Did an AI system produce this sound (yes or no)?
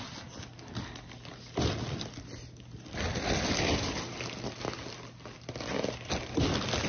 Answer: no